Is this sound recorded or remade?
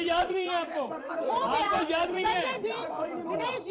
remade